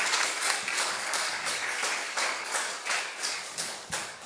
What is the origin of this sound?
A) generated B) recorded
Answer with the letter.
A